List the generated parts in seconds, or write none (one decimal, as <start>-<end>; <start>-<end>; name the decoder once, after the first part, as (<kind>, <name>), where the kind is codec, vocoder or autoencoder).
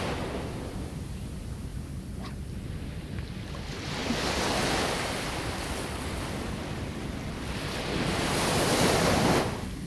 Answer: none